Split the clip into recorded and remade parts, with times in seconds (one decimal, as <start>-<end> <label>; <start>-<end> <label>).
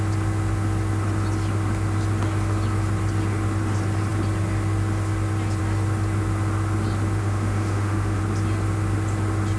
0.0-7.2 recorded; 7.2-8.2 remade; 8.2-9.6 recorded